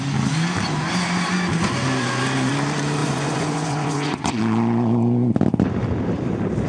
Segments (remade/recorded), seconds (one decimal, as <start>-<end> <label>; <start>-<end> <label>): 0.0-3.0 recorded; 3.0-4.4 remade; 4.4-6.7 recorded